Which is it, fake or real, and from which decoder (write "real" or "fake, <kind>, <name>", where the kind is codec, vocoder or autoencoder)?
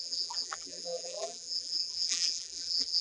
fake, vocoder, BigVGAN v2